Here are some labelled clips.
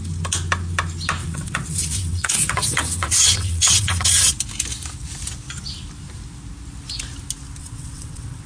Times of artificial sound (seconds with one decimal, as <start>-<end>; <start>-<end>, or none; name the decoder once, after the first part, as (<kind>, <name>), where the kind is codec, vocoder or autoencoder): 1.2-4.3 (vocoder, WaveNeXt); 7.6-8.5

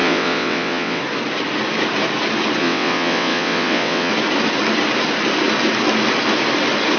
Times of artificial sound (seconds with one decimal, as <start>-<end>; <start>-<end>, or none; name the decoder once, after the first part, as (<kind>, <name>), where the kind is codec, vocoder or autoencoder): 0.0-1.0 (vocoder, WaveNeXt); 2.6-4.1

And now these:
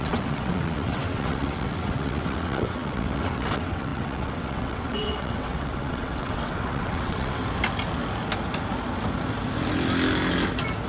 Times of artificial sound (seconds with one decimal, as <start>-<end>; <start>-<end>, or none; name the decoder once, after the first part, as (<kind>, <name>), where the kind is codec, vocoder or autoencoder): 0.0-7.4 (vocoder, WaveNeXt)